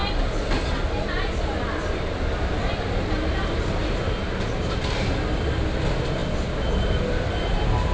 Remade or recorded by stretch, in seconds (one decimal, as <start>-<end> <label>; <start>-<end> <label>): 0.0-4.7 recorded; 4.7-6.2 remade; 6.2-6.8 recorded; 6.8-7.9 remade